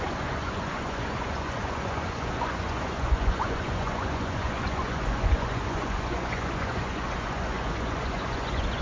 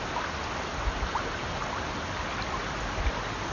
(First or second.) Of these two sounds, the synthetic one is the first